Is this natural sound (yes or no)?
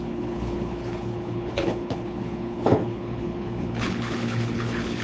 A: no